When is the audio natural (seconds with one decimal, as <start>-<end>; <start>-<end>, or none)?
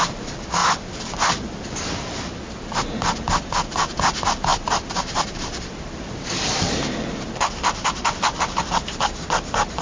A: 0.0-4.5; 6.7-9.8